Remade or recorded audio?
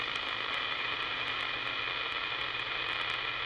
recorded